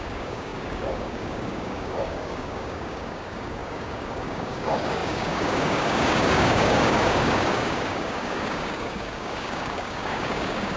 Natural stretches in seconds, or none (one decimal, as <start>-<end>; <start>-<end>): none